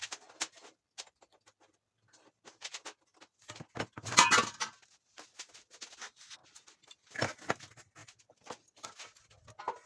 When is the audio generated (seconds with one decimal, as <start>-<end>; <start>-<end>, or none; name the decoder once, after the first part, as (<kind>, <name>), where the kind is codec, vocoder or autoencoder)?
none